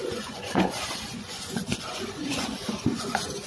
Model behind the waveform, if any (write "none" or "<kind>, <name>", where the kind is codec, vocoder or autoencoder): vocoder, Vocos